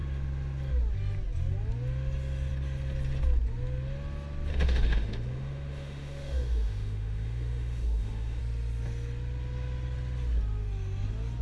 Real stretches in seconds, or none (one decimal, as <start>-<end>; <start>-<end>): 0.0-4.5; 8.4-11.4